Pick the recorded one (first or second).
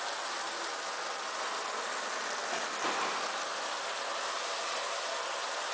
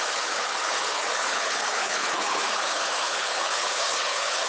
first